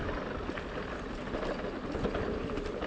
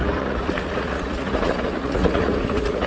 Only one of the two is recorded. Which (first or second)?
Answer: first